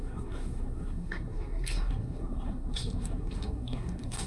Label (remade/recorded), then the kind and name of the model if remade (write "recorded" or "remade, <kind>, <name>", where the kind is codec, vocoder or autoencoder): remade, codec, SNAC